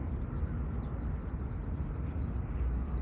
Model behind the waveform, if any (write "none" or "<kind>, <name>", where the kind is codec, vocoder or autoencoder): none